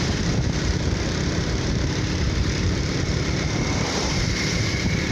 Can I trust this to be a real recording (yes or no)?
no